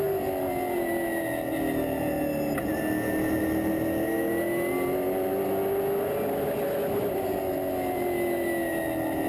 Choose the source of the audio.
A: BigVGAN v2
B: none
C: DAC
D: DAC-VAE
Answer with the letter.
B